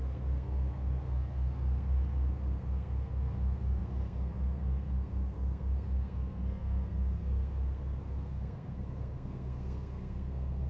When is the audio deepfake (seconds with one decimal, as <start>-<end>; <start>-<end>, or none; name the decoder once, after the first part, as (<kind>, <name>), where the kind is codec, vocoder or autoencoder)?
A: 0.0-10.7 (codec, SNAC)